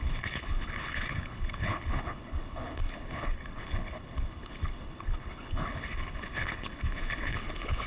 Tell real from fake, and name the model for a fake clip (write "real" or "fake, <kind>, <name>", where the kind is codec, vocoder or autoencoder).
fake, codec, HILCodec